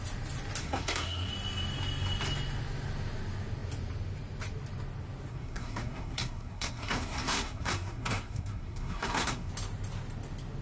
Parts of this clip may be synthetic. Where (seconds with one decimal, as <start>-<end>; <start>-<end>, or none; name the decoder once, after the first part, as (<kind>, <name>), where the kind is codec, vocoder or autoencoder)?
0.6-1.3 (codec, SNAC); 5.3-9.5